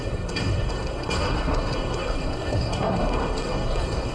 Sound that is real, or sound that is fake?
fake